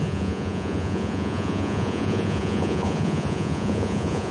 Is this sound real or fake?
fake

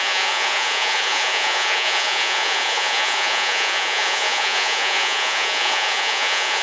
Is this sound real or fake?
fake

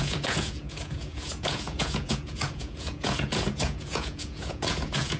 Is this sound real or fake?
fake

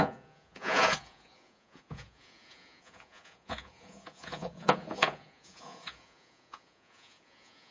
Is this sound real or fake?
fake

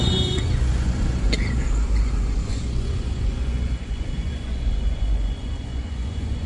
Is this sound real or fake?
fake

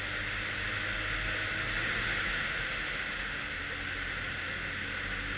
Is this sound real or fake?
real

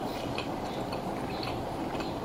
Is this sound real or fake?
real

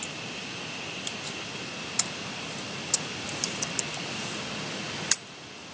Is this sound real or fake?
real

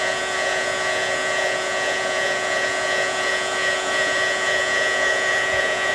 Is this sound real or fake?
fake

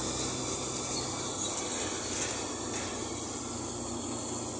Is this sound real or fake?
real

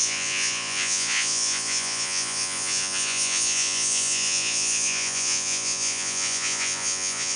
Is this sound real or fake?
fake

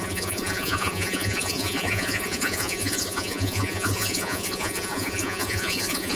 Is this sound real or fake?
fake